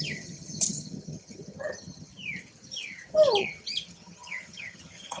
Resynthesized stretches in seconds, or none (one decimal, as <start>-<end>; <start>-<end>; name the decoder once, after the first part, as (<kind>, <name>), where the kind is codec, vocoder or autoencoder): 0.0-2.1 (vocoder, HiFi-GAN); 3.4-5.2